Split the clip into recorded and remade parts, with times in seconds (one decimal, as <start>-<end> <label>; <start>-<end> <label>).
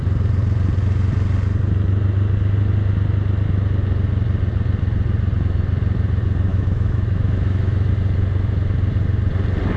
0.0-6.5 recorded; 6.5-7.9 remade; 7.9-9.8 recorded